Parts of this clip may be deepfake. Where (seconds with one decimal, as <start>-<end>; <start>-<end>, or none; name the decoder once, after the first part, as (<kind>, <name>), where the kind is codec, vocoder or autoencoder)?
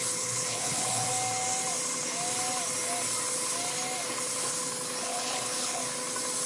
0.0-1.1 (codec, HILCodec); 5.0-5.8